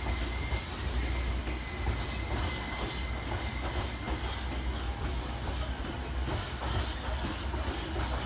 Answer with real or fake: real